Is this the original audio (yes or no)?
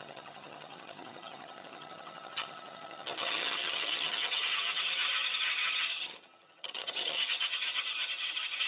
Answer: no